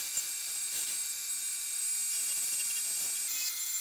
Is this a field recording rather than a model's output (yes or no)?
yes